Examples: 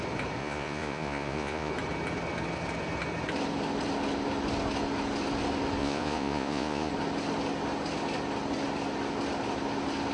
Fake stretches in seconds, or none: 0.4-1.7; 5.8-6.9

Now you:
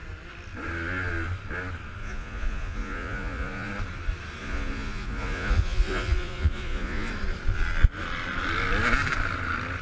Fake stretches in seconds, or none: 2.0-3.7; 4.4-7.1

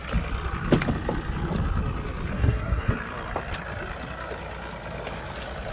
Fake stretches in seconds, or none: 2.3-2.9

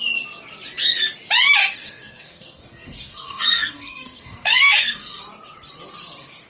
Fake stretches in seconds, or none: 1.6-5.2

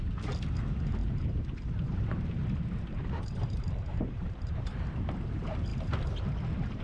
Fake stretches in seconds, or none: 1.0-4.9

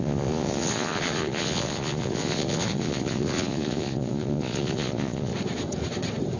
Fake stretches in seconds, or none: 0.0-5.3

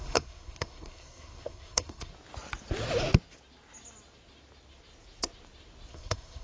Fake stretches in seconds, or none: 0.0-2.1; 5.9-6.4

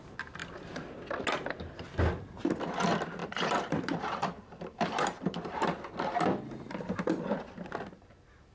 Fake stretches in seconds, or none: 3.2-5.6